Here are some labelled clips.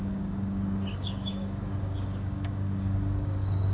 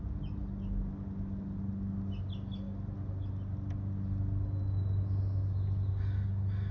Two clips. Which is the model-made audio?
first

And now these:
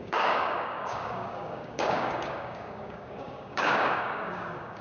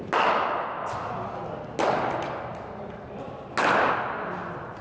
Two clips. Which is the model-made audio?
first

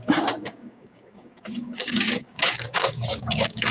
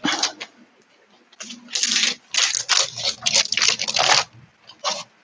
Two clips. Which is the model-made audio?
first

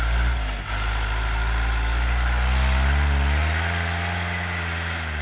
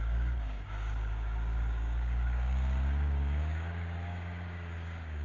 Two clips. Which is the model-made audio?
second